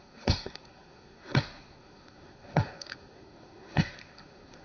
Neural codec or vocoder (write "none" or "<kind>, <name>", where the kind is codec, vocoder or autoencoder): codec, SNAC